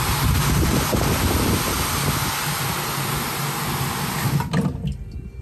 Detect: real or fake real